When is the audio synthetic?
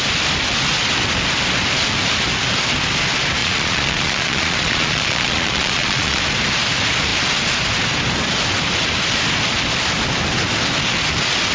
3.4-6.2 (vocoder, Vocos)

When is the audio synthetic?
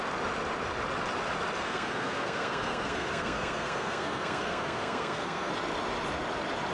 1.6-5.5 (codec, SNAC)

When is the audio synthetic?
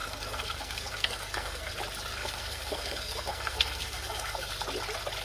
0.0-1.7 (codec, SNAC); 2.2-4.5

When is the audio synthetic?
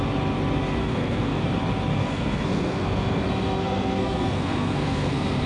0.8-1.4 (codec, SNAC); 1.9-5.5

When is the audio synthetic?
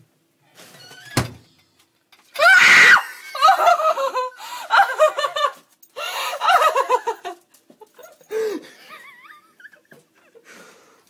3.7-4.2 (autoencoder, DAC-VAE)